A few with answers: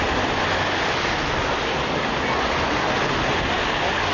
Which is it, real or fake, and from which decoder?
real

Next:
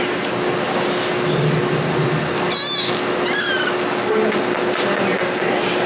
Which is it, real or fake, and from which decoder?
real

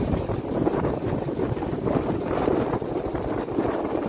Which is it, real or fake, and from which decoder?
real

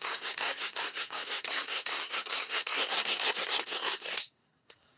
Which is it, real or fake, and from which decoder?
fake, codec, SNAC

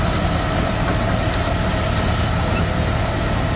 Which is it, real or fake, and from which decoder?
real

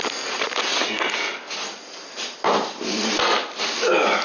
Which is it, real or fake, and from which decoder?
real